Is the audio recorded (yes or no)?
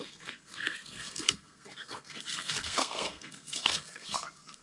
no